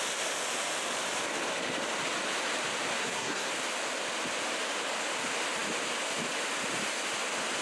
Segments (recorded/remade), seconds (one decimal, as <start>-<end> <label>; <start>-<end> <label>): 0.0-3.0 recorded; 3.0-3.5 remade; 3.5-7.6 recorded